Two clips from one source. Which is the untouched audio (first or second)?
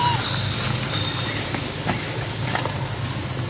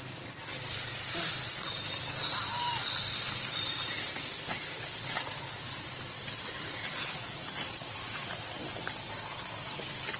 first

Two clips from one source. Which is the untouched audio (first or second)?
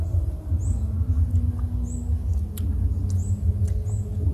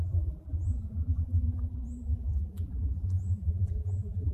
first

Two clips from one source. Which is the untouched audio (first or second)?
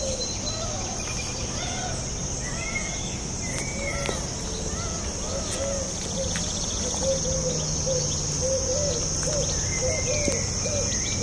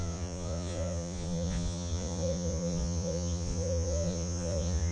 first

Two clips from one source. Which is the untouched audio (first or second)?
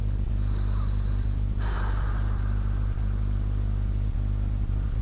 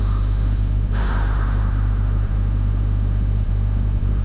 first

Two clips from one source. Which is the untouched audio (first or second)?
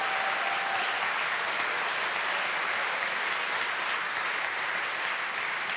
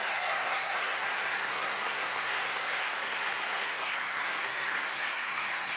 first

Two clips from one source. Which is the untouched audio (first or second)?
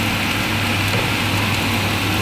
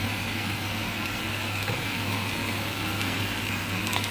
first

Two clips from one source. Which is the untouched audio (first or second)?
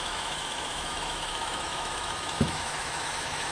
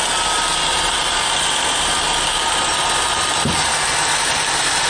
second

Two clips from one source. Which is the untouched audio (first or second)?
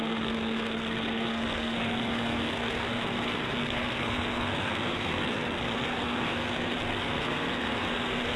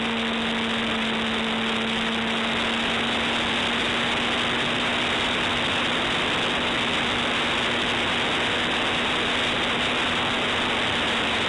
second